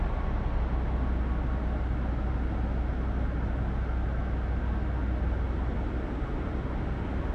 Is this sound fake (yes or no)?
no